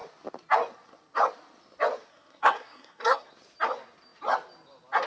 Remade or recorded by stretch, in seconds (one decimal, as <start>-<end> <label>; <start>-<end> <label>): 0.0-2.1 recorded; 2.1-3.3 remade; 3.3-5.1 recorded